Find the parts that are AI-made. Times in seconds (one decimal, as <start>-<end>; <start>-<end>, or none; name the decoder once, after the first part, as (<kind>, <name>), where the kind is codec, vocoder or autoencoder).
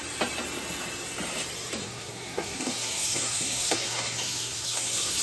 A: 1.8-5.2 (codec, SNAC)